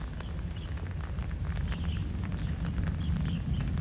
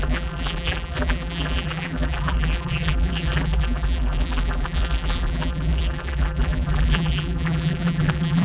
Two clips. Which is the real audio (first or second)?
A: first